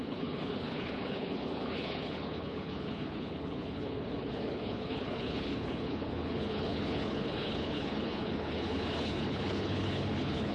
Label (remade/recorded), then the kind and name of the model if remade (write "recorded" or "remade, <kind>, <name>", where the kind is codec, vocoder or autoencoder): remade, codec, HILCodec